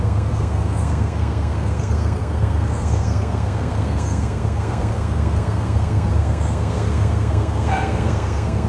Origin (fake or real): fake